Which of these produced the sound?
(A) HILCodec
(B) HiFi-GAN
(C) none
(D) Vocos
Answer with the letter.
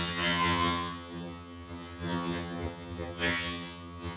B